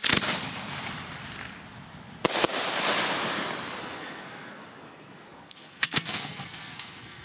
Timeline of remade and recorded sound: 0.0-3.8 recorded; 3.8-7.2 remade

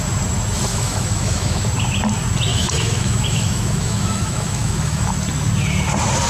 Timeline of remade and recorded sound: 0.0-0.7 recorded; 0.7-1.6 remade; 1.6-2.5 recorded; 2.5-5.1 remade; 5.1-6.3 recorded

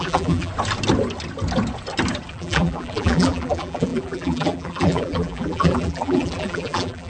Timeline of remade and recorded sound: 0.0-0.5 remade; 0.5-2.3 recorded; 2.3-7.1 remade